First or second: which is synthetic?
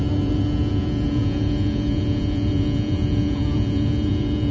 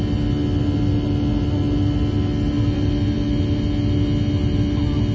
first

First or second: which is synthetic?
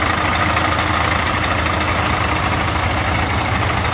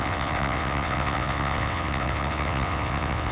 second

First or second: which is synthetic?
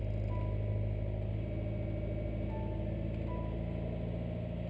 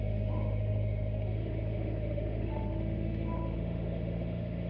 second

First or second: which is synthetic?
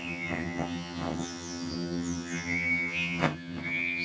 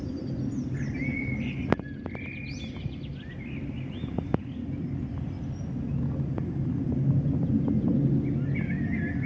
first